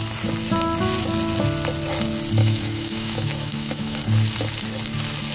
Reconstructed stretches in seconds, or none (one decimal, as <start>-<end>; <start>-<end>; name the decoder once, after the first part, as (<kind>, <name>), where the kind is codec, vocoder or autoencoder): 2.4-4.0 (autoencoder, DAC-VAE)